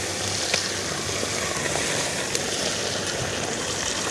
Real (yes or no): yes